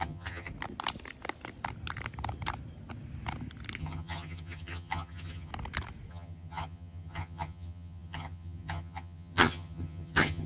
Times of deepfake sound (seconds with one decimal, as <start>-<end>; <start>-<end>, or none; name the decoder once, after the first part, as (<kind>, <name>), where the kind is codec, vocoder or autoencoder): 0.0-0.5 (vocoder, HiFi-GAN); 3.8-5.5; 6.1-10.5